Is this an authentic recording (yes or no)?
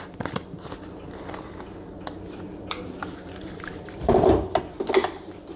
no